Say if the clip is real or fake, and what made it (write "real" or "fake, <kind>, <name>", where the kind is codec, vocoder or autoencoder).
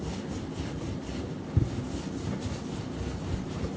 real